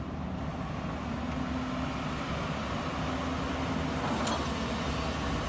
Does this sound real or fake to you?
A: real